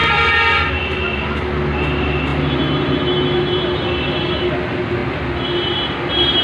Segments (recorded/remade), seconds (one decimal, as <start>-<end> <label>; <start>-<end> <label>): 0.0-6.4 recorded